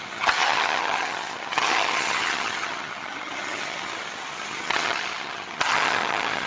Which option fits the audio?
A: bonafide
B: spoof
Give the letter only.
B